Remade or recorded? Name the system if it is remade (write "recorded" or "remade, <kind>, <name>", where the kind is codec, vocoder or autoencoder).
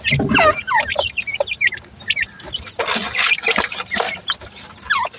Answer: recorded